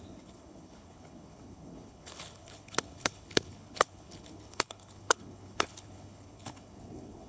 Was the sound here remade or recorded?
remade